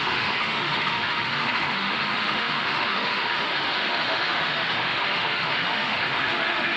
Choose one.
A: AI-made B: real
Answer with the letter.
A